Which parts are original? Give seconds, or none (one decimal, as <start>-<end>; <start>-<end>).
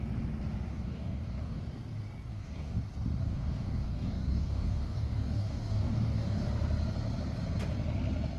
0.0-0.7; 1.6-2.3; 2.8-3.2; 6.5-8.4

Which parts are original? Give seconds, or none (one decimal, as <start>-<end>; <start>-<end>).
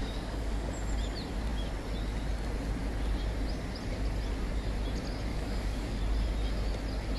0.7-5.3; 6.0-7.2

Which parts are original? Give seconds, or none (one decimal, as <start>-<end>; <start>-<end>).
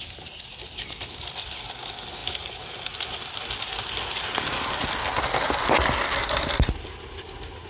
0.0-7.7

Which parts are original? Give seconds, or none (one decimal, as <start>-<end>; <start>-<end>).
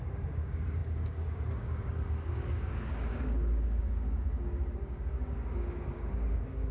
none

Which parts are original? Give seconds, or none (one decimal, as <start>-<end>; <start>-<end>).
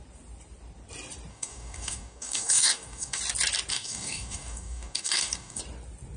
0.0-1.3; 3.2-3.7; 5.6-6.2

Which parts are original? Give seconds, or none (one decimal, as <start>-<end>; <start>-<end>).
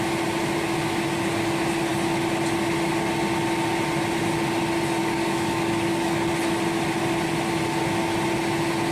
0.0-5.0; 6.3-8.9